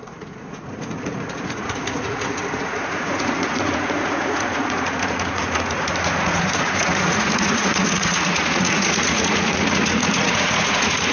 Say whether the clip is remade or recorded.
remade